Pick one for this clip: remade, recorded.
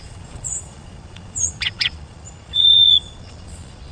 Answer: remade